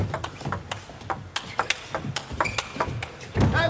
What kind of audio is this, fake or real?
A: real